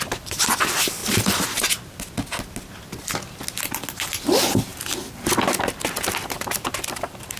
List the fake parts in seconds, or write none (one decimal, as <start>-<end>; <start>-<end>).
none